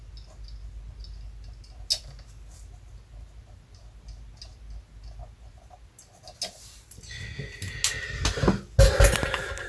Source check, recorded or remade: recorded